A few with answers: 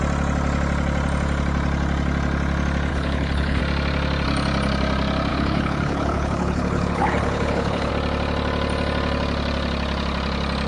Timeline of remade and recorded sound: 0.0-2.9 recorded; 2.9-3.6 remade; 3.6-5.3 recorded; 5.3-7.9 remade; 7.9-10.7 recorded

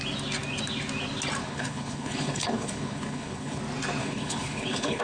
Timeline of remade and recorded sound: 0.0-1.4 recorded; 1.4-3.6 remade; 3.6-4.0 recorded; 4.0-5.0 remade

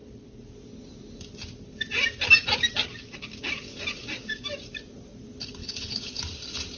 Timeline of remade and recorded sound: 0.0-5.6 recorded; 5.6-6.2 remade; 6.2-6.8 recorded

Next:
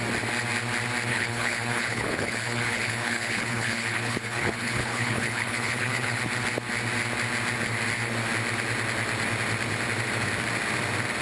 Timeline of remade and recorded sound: 0.0-1.1 recorded; 1.1-6.2 remade; 6.2-11.2 recorded

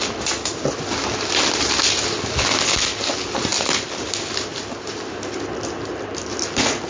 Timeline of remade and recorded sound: 0.0-6.9 recorded

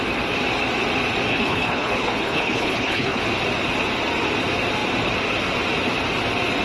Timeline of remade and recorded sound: 0.0-1.3 recorded; 1.3-3.2 remade; 3.2-6.6 recorded